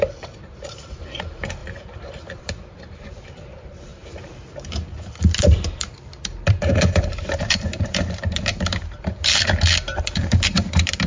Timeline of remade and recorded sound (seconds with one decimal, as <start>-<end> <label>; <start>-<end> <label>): 0.0-11.1 remade